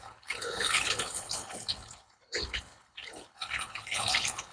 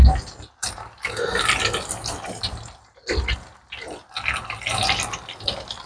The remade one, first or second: first